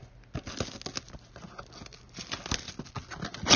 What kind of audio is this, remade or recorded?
recorded